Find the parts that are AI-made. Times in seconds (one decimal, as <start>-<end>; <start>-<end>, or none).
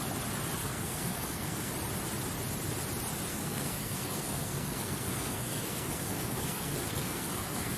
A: 0.6-1.7; 3.3-7.8